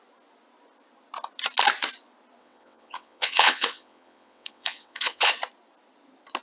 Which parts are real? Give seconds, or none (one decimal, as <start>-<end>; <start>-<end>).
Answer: 0.0-2.4; 5.3-6.4